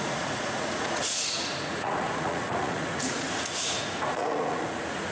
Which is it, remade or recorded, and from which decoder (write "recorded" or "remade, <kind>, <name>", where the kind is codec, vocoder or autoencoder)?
remade, vocoder, Vocos